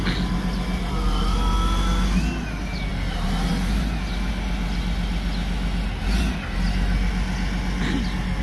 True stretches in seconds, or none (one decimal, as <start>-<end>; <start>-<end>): 0.0-8.4